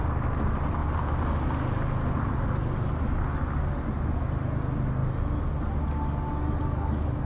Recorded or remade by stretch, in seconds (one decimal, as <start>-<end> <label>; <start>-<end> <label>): 0.0-7.2 recorded